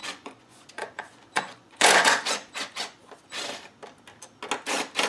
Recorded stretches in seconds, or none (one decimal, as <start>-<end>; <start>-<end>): 3.1-5.1